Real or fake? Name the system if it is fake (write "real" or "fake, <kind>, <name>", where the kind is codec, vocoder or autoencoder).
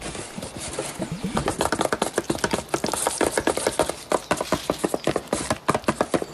real